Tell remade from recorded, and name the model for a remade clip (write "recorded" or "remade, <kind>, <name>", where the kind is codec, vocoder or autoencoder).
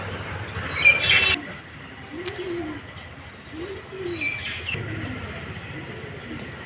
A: recorded